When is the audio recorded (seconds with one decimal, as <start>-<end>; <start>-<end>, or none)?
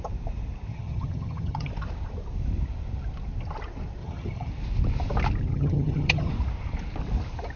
0.0-0.7; 1.7-4.0; 4.5-5.5; 6.3-7.6